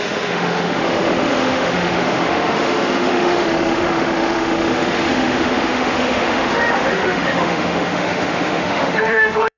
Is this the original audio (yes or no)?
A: no